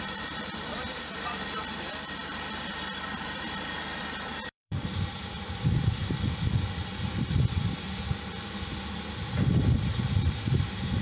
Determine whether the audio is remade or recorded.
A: remade